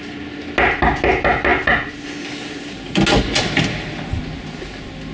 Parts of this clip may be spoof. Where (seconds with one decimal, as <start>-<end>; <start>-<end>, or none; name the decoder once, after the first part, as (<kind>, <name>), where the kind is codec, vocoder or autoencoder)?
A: none